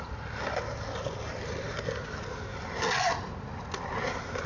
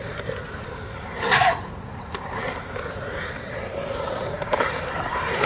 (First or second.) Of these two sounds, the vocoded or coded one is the second